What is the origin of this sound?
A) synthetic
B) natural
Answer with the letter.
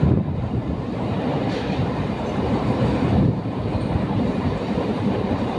A